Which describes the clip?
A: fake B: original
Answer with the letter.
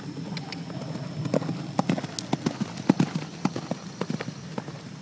B